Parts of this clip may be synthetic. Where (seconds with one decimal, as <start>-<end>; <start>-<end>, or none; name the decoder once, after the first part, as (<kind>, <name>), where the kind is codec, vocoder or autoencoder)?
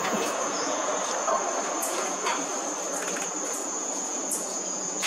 0.0-0.9 (vocoder, Vocos); 1.8-2.3; 3.5-5.1